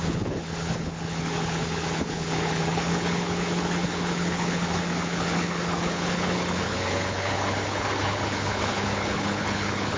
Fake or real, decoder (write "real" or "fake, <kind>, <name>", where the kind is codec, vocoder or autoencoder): fake, codec, HILCodec